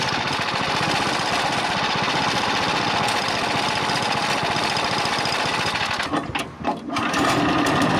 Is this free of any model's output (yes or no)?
yes